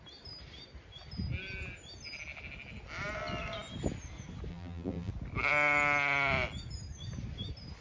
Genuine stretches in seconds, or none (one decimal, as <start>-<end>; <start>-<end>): 0.0-4.5; 5.1-7.8